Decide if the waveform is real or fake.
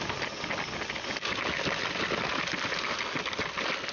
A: real